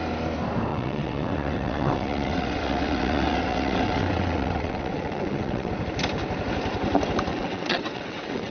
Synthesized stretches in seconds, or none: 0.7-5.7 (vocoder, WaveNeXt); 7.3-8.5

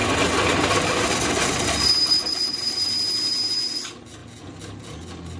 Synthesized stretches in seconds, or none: none

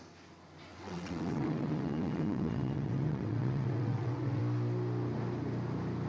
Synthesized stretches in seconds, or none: 0.7-4.4 (vocoder, WaveNeXt)

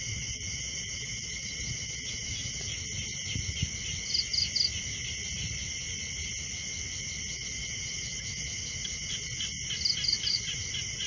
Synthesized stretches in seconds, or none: 0.0-2.7 (vocoder, WaveNeXt); 7.3-9.5; 10.3-11.1